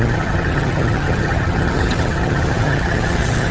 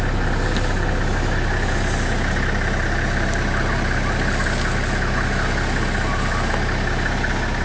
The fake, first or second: first